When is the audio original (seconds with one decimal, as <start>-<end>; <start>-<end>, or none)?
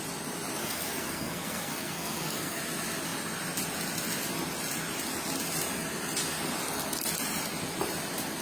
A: 0.0-0.6; 2.6-8.4